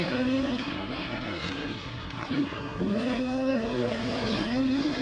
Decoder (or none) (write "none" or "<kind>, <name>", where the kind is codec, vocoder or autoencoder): codec, SNAC